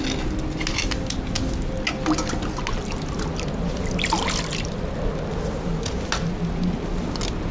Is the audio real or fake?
real